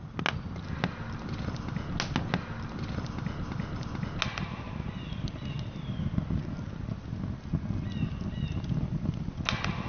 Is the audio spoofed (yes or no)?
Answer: no